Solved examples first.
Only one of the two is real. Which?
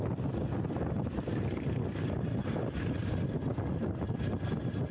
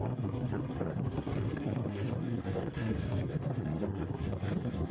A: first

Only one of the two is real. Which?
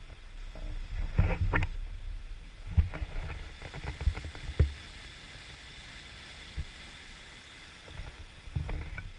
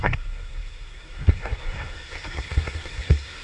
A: first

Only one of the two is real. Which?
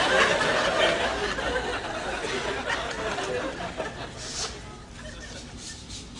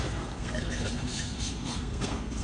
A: first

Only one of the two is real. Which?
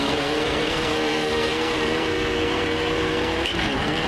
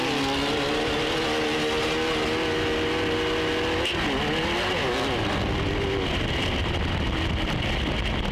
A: second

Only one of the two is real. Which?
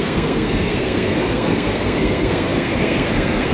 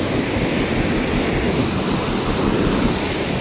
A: second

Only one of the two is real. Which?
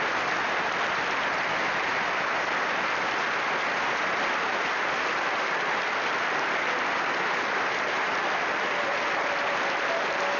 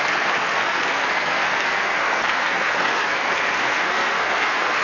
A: first